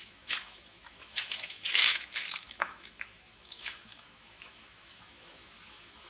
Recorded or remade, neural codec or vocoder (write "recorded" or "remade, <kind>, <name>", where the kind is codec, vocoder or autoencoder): remade, autoencoder, DAC-VAE